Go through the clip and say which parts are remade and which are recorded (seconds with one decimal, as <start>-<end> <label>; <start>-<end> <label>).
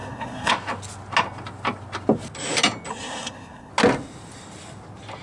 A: 0.0-0.5 remade; 0.5-2.9 recorded; 2.9-3.7 remade; 3.7-5.2 recorded